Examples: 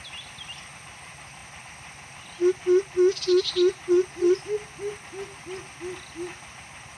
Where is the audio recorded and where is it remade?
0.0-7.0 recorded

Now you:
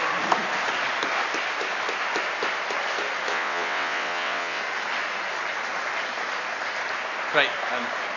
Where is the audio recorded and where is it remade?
0.0-3.3 recorded; 3.3-4.6 remade; 4.6-8.2 recorded

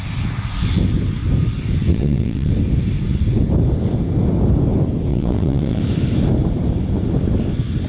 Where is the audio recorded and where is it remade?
0.0-1.9 recorded; 1.9-2.5 remade; 2.5-5.1 recorded; 5.1-5.8 remade; 5.8-7.9 recorded

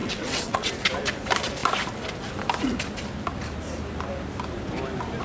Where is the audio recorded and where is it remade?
0.0-0.7 remade; 0.7-5.2 recorded